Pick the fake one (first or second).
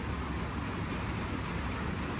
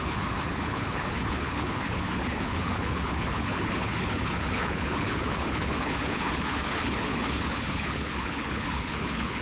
second